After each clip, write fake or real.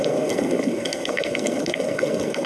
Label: fake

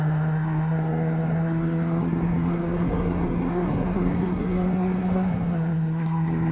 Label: fake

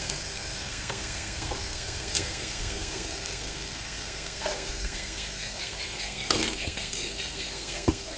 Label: fake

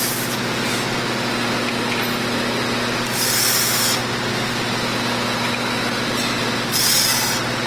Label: real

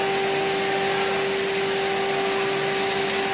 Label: real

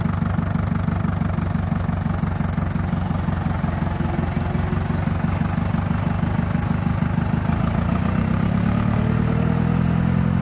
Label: real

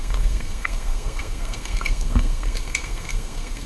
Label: fake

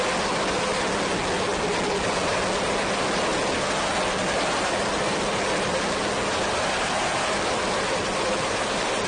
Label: real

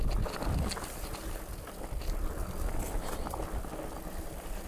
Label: real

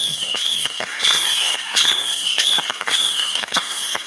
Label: fake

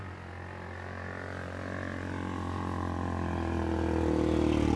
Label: real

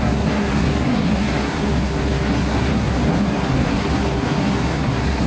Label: fake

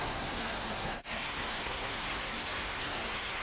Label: fake